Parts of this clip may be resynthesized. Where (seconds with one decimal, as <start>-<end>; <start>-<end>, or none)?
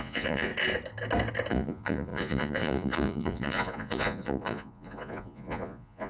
0.0-0.5; 1.5-6.1